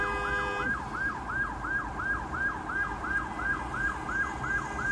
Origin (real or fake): real